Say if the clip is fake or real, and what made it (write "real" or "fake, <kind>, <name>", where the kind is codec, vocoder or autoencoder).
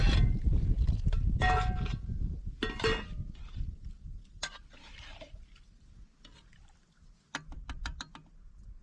real